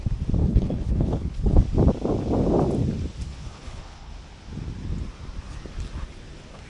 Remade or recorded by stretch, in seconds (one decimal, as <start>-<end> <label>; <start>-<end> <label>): 0.0-0.4 recorded; 0.4-1.6 remade; 1.6-3.3 recorded; 3.3-4.1 remade; 4.1-6.7 recorded